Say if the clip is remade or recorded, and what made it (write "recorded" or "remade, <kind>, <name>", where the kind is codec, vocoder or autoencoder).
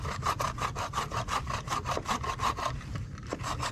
recorded